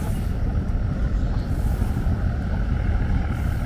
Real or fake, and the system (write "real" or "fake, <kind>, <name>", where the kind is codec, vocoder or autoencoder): real